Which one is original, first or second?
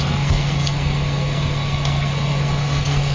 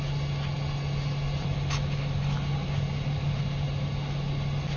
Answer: second